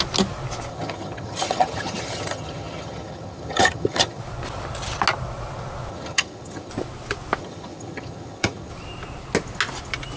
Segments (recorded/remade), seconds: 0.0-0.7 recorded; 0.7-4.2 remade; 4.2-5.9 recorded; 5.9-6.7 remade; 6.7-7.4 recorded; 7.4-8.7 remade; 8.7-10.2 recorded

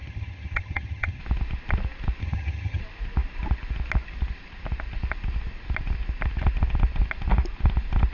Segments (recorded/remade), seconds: 0.0-1.2 remade; 1.2-2.2 recorded; 2.2-2.8 remade; 2.8-8.1 recorded